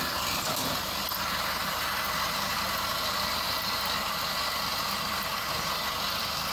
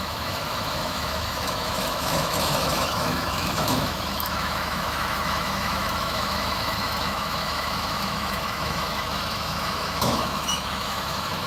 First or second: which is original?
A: first